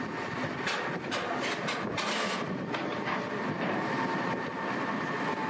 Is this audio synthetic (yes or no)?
no